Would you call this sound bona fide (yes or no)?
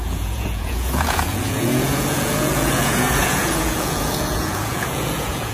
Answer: no